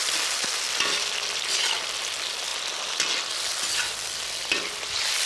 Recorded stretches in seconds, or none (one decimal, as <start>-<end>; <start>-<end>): 0.0-5.3